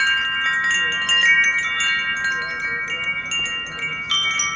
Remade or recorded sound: recorded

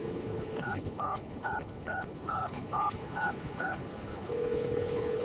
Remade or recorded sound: remade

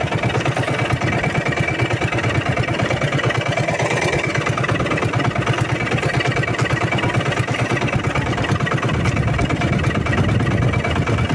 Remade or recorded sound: recorded